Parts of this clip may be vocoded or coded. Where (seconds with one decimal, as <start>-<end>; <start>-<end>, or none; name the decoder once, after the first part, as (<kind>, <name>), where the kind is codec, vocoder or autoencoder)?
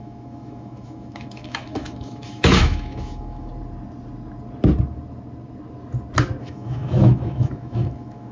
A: 0.0-3.5 (autoencoder, DAC-VAE); 6.4-8.3